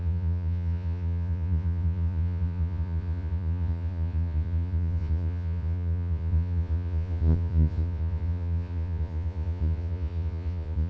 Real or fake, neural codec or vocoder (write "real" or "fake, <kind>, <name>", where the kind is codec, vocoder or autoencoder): fake, vocoder, Vocos